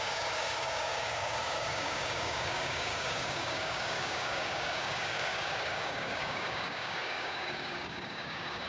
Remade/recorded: remade